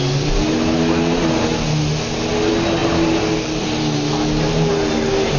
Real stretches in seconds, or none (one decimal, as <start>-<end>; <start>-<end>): 0.0-1.5; 2.3-2.8; 4.7-5.4

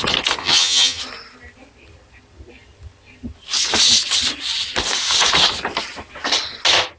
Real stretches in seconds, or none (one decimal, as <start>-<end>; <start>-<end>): 0.0-0.4; 1.0-7.0

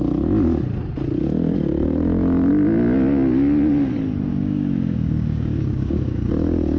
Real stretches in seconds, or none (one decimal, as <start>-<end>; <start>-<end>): 0.0-4.3; 6.3-6.8

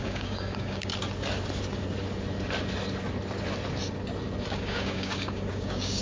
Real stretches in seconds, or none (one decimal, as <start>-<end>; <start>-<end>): 0.9-4.5

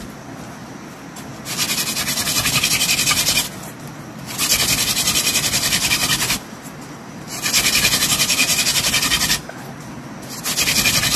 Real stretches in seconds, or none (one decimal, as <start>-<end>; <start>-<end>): 0.0-11.2

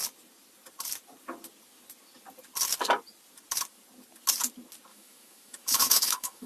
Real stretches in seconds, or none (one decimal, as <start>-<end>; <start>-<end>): 0.0-4.9

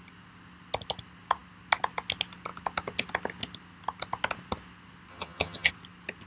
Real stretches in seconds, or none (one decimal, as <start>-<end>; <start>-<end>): 0.0-5.1; 5.7-6.3

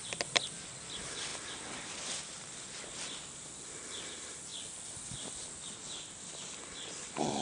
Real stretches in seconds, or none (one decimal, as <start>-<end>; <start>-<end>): 0.0-7.4